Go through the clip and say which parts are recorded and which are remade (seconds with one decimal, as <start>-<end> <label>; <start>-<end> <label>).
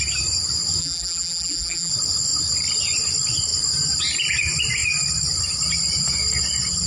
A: 0.0-0.8 recorded; 0.8-1.9 remade; 1.9-6.9 recorded